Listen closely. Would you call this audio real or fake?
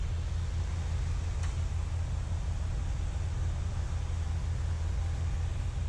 real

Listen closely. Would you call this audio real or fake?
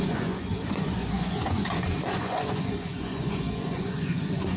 fake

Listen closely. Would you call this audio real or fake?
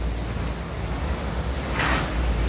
real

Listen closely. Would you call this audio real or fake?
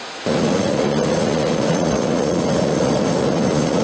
fake